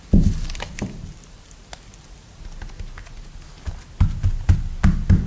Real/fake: real